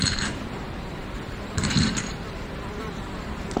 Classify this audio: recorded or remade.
remade